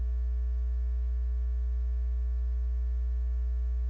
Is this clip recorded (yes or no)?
yes